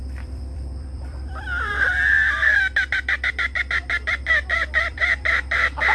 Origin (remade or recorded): remade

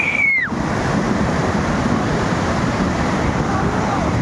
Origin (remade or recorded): remade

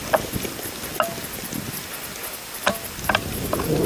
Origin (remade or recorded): recorded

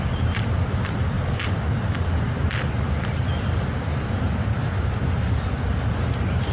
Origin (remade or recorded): recorded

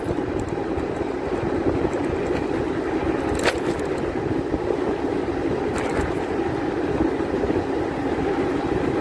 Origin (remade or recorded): remade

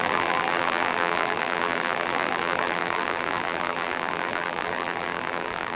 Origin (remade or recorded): remade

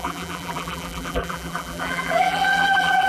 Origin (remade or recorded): remade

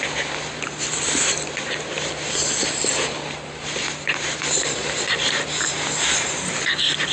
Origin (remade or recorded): remade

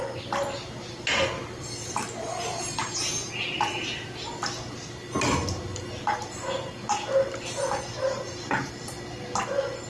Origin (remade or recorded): recorded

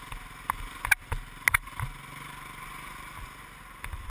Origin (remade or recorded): recorded